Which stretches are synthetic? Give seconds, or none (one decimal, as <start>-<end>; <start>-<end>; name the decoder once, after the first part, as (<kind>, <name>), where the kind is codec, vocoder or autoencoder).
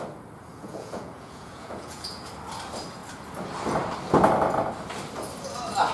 0.5-2.3 (vocoder, Vocos)